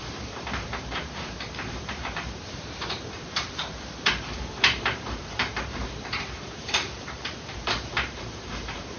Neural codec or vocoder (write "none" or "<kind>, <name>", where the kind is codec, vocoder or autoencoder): vocoder, BigVGAN v2